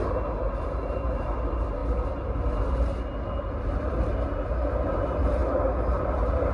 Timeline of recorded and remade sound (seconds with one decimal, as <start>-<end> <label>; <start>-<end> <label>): 0.0-6.5 recorded